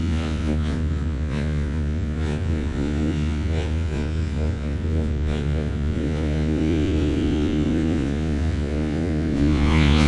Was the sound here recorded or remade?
remade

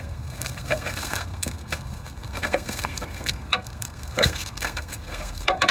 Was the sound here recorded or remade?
remade